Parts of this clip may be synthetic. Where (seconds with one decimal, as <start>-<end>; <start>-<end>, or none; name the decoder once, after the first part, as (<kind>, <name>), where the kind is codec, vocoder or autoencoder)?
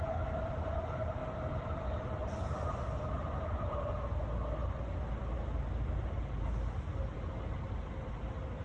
none